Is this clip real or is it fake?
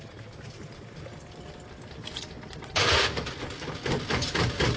real